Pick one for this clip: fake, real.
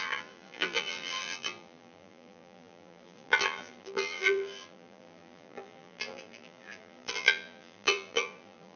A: fake